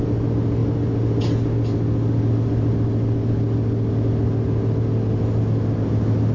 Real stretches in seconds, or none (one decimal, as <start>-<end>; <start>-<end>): 0.0-6.3